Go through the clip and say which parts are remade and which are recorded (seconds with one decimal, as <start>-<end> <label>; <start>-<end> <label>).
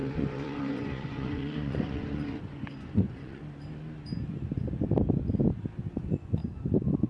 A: 0.0-3.4 remade; 3.4-5.9 recorded; 5.9-6.4 remade; 6.4-7.1 recorded